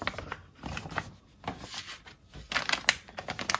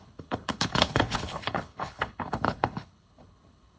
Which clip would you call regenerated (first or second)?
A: second